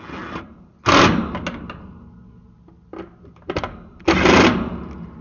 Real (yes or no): yes